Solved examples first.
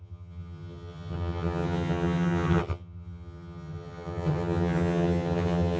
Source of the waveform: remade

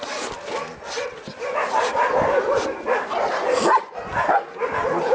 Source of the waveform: recorded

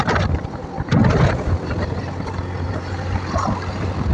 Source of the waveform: recorded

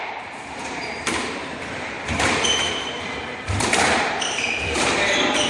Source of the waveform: remade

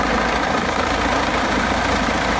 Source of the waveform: recorded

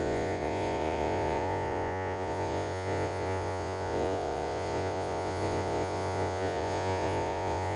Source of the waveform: remade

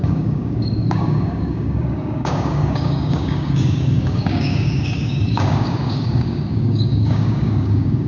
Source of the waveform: remade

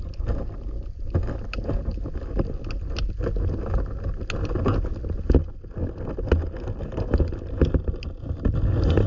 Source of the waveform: recorded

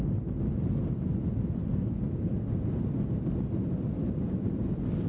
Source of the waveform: recorded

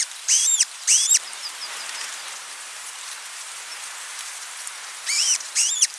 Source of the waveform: remade